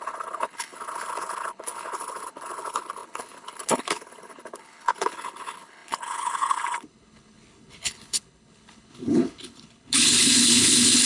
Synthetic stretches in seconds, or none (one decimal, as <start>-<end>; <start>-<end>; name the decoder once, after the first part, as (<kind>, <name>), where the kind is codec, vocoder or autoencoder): 0.0-11.1 (codec, HILCodec)